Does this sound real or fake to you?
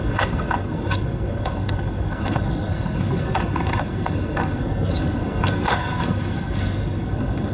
fake